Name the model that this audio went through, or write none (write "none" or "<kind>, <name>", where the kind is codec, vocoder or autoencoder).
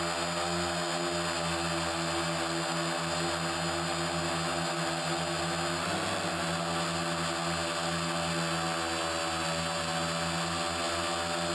none